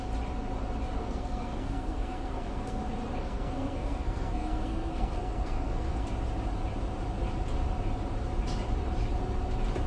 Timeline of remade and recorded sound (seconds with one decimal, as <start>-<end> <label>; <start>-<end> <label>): 0.0-1.0 recorded; 1.0-2.8 remade; 2.8-3.2 recorded; 3.2-6.1 remade; 6.1-9.9 recorded